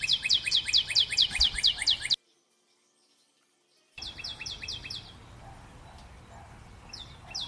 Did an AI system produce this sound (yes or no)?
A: no